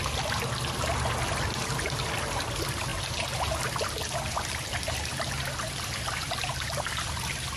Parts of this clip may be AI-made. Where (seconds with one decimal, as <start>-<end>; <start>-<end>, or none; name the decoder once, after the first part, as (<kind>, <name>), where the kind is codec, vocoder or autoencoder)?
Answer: none